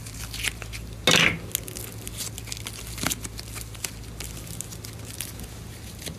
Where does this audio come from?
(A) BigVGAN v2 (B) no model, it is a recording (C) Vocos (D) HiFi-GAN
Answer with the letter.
B